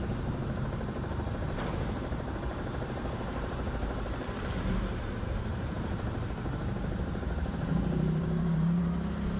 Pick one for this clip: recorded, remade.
remade